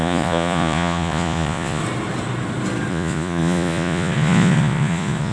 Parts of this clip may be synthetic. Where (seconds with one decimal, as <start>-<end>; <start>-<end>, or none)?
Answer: 0.0-1.8; 2.9-5.3